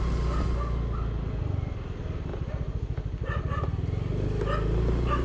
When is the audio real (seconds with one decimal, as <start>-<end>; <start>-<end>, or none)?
0.0-5.2